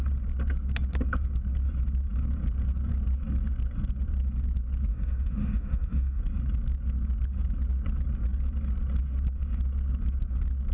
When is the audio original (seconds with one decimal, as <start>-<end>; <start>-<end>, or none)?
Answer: 0.0-4.9; 6.2-10.7